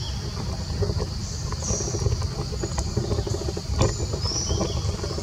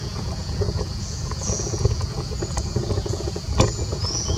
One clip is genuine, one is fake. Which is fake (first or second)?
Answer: second